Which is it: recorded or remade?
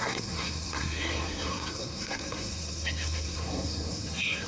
remade